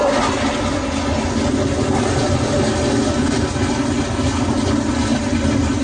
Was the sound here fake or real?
real